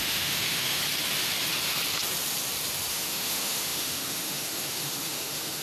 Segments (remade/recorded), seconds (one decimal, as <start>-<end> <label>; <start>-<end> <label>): 0.0-0.8 remade; 0.8-2.9 recorded; 2.9-5.6 remade